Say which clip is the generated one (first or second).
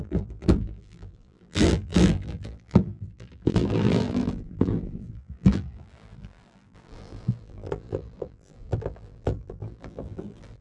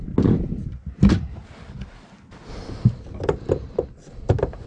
first